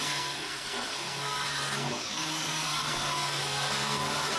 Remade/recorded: remade